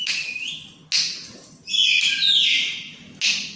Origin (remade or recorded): recorded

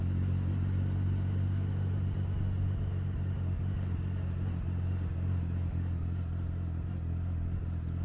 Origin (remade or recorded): recorded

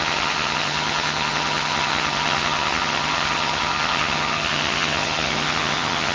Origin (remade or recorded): remade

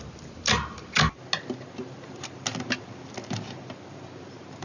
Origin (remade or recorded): recorded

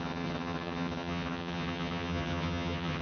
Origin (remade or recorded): remade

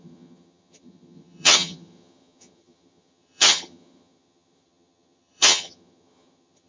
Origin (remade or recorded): remade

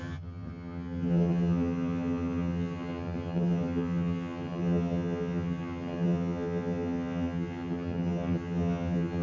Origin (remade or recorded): remade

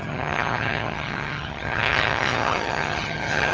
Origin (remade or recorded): remade